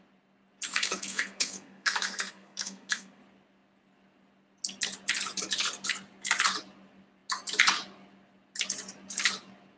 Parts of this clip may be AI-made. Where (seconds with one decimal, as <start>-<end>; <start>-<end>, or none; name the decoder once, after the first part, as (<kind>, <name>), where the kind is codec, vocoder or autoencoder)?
0.7-3.2 (codec, SNAC)